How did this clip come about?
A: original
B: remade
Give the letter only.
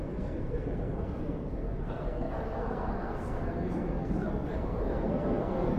B